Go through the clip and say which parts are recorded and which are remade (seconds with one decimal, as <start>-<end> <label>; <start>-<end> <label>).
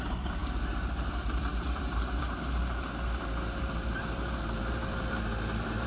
0.0-5.9 remade